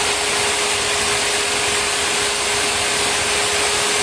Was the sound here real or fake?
real